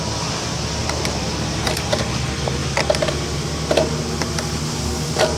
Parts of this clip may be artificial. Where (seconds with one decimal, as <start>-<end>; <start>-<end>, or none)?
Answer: 0.8-2.1